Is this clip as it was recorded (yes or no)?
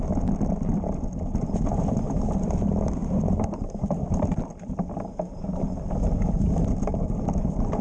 yes